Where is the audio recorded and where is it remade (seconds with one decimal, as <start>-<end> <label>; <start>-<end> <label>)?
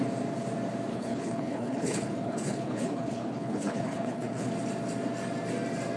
0.0-0.9 recorded; 0.9-4.5 remade; 4.5-6.0 recorded